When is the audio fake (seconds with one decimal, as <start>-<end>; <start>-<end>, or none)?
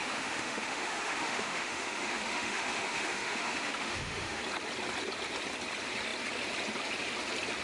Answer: 0.0-4.4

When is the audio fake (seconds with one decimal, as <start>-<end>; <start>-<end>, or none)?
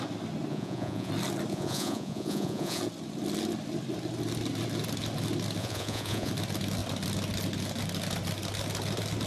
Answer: 0.5-1.1; 1.5-2.8; 5.6-6.3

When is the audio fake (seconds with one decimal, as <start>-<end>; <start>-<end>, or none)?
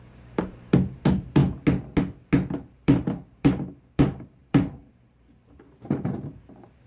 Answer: 0.0-1.4; 2.5-6.9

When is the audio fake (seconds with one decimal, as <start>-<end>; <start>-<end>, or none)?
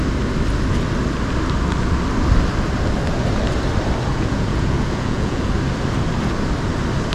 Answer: 4.1-5.5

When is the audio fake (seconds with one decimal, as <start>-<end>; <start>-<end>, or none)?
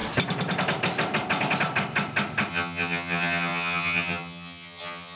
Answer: 2.5-5.2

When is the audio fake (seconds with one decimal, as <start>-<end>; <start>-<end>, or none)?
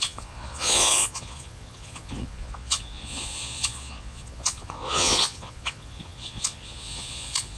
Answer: 0.0-7.6